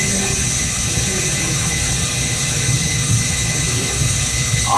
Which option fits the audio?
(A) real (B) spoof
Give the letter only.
B